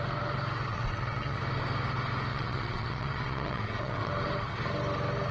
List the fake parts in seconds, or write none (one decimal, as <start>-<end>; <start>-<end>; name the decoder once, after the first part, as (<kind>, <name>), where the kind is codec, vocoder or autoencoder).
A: 0.7-1.4 (vocoder, WaveNeXt); 2.3-4.1

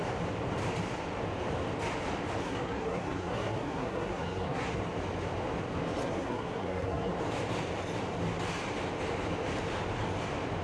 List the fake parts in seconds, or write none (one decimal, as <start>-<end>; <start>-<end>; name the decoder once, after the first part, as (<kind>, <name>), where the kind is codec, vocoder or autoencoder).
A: 2.4-4.8 (codec, SNAC); 6.0-7.1

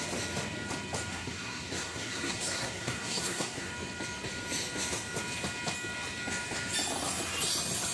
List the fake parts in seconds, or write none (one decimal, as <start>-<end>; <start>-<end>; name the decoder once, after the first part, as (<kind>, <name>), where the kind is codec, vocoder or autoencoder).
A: 1.1-3.7 (codec, SNAC)

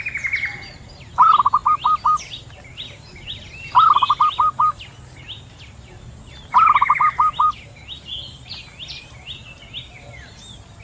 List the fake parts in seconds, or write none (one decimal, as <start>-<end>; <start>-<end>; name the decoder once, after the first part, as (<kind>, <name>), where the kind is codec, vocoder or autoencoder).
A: none

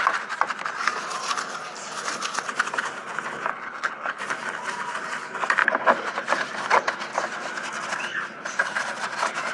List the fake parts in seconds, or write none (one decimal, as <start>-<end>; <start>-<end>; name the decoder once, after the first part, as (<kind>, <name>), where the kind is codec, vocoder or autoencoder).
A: 3.5-4.2 (codec, HILCodec)

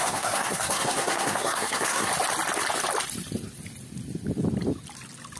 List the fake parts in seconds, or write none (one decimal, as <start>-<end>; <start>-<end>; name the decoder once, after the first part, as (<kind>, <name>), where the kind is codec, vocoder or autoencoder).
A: 0.0-2.1 (codec, SNAC)

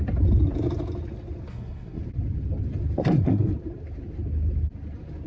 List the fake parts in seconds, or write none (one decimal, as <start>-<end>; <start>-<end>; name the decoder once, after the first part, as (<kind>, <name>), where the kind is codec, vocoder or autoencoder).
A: 1.5-2.0 (codec, SNAC); 3.0-3.5

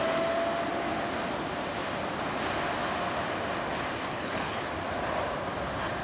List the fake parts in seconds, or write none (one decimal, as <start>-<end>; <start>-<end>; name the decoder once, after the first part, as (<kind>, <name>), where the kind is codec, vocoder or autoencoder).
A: 4.1-4.7 (codec, HILCodec)